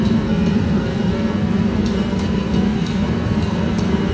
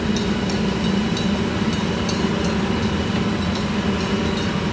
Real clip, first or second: second